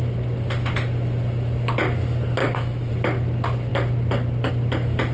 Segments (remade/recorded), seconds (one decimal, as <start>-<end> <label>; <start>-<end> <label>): 0.0-2.4 recorded; 2.4-2.9 remade; 2.9-5.1 recorded